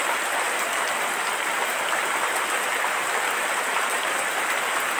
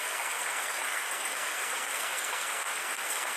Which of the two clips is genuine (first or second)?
first